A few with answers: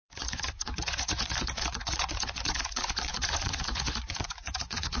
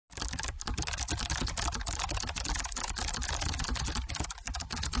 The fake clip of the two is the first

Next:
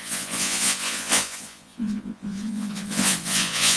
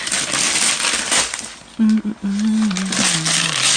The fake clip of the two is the first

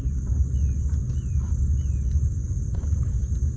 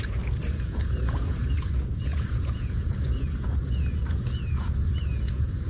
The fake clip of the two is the second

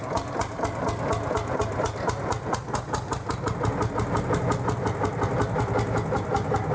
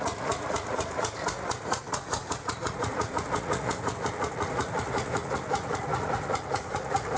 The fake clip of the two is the second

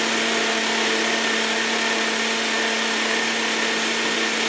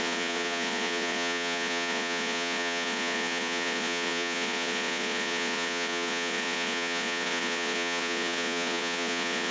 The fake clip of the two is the second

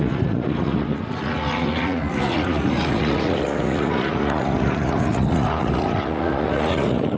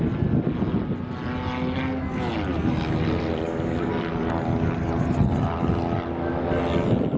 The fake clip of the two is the first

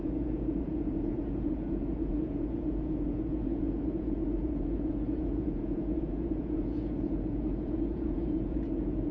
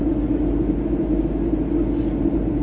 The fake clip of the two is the first